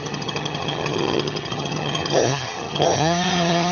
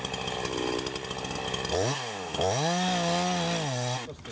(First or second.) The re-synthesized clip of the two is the first